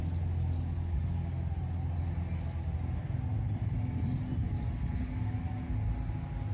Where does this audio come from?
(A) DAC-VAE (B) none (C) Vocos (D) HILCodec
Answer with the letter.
B